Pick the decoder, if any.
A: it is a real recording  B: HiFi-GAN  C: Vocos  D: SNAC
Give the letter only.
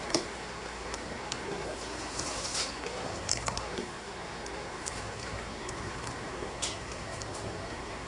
D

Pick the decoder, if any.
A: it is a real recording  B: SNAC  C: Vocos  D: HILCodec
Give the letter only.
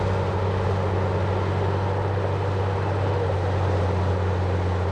A